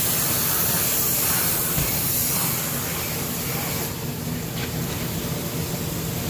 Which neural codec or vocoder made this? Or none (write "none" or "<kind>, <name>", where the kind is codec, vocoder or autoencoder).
none